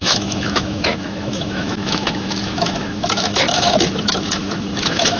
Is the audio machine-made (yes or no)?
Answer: yes